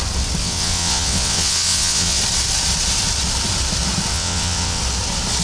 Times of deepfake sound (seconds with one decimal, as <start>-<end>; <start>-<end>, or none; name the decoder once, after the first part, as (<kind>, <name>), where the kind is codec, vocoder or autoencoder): 0.4-2.2 (vocoder, WaveNeXt); 4.1-4.8